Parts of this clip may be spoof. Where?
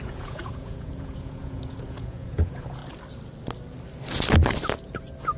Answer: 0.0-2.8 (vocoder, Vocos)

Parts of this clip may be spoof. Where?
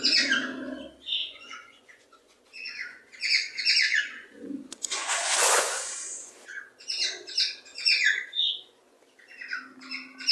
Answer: 1.2-6.3 (vocoder, Vocos); 7.7-9.0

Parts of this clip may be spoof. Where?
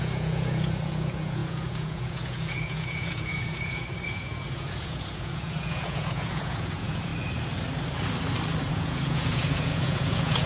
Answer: 0.0-7.1 (vocoder, Vocos); 8.6-10.5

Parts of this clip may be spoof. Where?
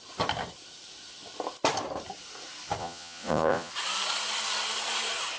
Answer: 2.8-3.7 (vocoder, Vocos)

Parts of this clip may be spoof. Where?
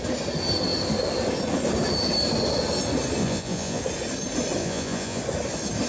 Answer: 3.2-3.8 (vocoder, Vocos); 4.6-5.2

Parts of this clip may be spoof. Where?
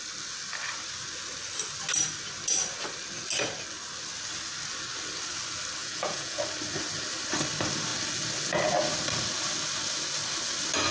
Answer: 5.8-6.4 (vocoder, Vocos)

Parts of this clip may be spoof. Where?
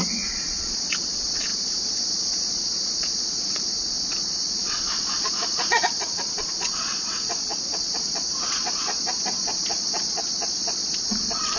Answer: 0.0-11.6 (vocoder, Vocos)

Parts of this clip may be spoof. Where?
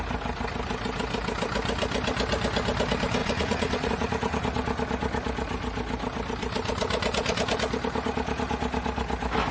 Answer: 3.2-3.9 (vocoder, Vocos)